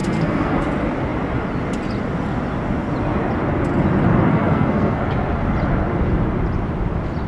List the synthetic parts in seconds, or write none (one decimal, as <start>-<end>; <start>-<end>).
0.0-0.6; 4.3-5.0